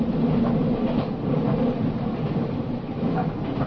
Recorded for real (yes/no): no